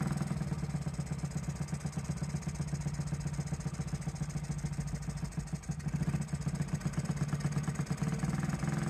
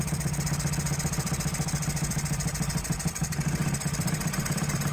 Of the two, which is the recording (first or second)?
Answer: first